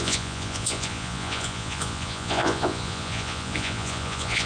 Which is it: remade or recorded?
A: remade